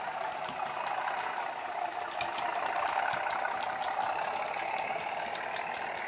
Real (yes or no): no